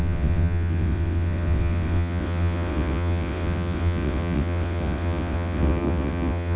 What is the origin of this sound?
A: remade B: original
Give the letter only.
A